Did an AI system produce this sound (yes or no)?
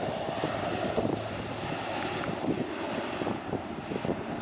yes